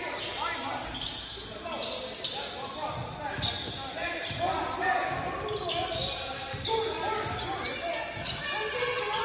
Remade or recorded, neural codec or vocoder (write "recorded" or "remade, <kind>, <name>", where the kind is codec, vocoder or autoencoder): recorded